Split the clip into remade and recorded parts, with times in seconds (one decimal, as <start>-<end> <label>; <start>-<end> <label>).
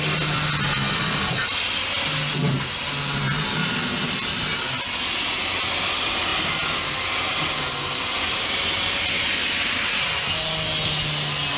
0.0-11.6 recorded